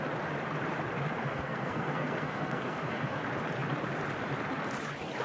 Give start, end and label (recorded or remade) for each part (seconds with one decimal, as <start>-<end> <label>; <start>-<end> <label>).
0.0-1.2 recorded; 1.2-3.2 remade; 3.2-5.2 recorded